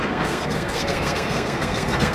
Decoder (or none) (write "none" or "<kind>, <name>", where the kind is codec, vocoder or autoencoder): codec, SNAC